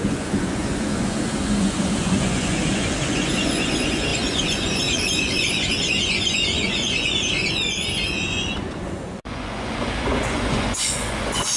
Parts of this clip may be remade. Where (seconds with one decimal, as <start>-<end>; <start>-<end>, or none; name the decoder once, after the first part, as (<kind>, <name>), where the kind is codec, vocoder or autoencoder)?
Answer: 0.0-11.6 (vocoder, Vocos)